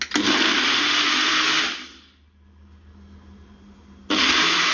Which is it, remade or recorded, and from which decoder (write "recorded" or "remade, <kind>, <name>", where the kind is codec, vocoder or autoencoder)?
recorded